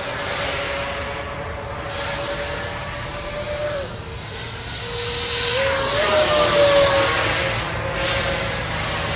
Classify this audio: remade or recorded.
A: recorded